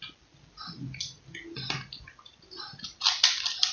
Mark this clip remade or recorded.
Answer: recorded